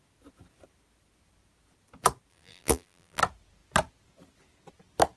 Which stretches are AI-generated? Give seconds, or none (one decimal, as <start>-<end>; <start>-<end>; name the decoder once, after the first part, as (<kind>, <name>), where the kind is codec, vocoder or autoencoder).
2.3-3.2 (vocoder, BigVGAN v2)